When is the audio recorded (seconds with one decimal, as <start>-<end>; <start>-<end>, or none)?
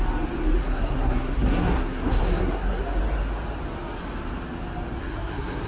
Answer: 0.0-0.6; 2.8-5.0